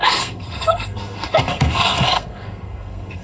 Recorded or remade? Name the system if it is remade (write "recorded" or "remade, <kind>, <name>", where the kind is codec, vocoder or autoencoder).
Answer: remade, codec, SNAC